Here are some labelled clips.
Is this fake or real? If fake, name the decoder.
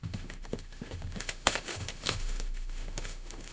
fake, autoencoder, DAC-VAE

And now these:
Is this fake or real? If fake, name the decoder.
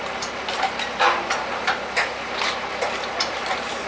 real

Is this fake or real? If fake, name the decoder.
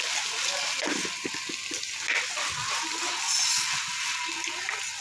real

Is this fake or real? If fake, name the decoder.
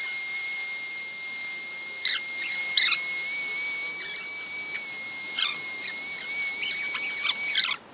real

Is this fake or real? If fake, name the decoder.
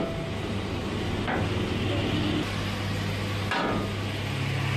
real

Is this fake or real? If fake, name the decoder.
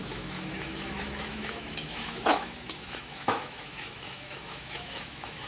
fake, autoencoder, DAC-VAE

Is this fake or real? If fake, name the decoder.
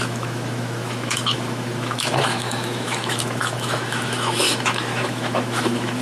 fake, autoencoder, DAC-VAE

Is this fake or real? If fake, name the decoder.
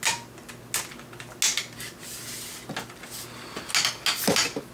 real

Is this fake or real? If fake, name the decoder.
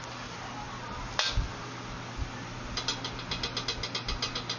real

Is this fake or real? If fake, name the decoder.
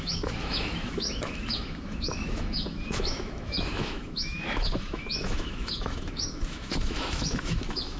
fake, autoencoder, DAC-VAE